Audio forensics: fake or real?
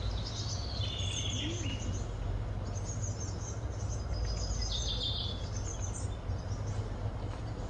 real